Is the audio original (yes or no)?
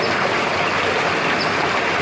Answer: yes